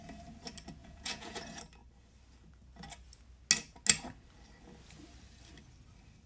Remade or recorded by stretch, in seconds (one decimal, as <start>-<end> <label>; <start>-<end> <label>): 0.0-0.8 recorded; 0.8-1.4 remade; 1.4-6.3 recorded